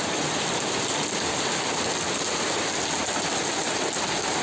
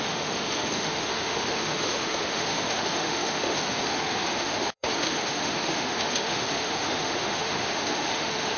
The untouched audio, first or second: first